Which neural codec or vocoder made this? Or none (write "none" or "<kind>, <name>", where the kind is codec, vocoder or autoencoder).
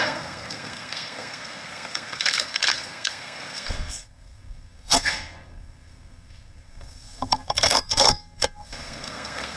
codec, SNAC